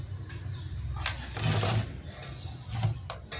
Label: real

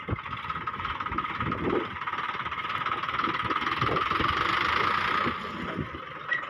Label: real